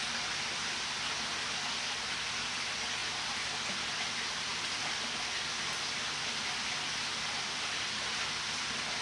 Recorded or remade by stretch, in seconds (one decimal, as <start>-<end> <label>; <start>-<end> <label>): 0.0-9.0 recorded